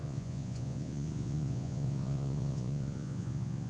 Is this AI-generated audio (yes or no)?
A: yes